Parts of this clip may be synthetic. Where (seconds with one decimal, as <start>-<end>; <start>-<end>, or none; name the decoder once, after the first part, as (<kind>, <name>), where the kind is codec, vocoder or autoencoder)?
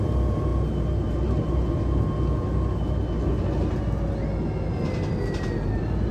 none